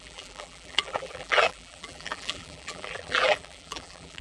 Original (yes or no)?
no